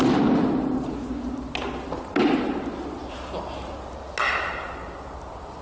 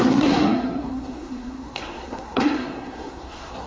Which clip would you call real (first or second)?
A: first